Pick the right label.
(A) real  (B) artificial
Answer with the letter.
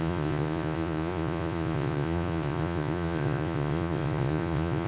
B